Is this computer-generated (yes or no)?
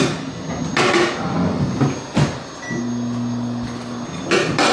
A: no